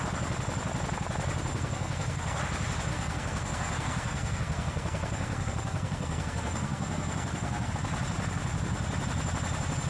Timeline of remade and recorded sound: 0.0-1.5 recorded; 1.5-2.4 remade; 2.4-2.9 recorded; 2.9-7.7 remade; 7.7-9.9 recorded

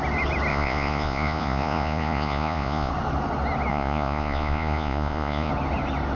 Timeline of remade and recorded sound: 0.0-0.5 recorded; 0.5-2.9 remade; 2.9-3.7 recorded; 3.7-5.5 remade; 5.5-6.2 recorded

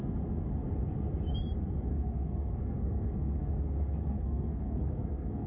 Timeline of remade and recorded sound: 0.0-1.9 recorded; 1.9-5.5 remade

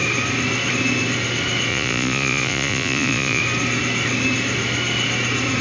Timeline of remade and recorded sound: 0.0-1.7 recorded; 1.7-3.4 remade; 3.4-5.6 recorded

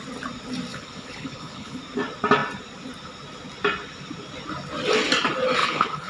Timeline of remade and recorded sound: 0.0-0.7 recorded; 0.7-1.8 remade; 1.8-5.6 recorded; 5.6-6.1 remade

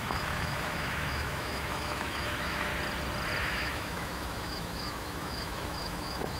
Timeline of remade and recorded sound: 0.0-2.7 remade; 2.7-3.4 recorded; 3.4-6.4 remade

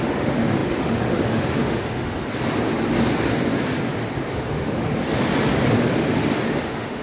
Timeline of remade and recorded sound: 0.0-2.2 remade; 2.2-4.3 recorded; 4.3-5.3 remade; 5.3-5.8 recorded; 5.8-7.0 remade